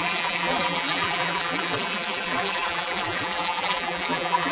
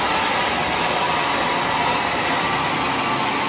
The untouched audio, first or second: second